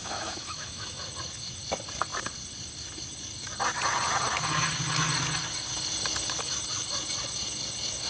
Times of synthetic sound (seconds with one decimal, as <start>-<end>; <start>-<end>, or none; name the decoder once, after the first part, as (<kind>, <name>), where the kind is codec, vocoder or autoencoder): 0.0-1.0 (autoencoder, DAC-VAE)